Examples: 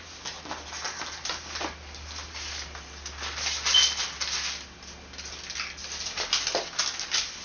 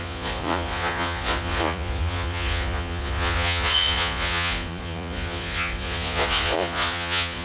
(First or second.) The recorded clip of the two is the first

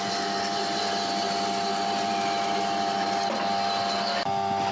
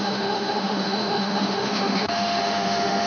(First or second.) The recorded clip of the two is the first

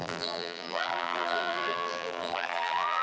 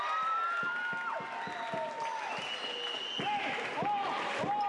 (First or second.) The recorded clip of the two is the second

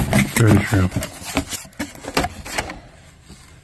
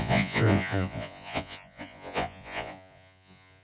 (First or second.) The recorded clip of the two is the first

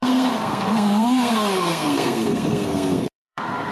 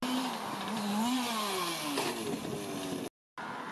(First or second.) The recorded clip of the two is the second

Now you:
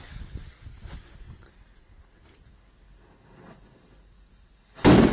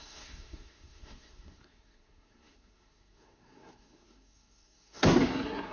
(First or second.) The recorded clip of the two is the first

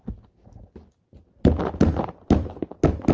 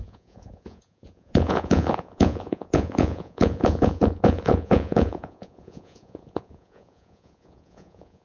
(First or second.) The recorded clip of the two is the first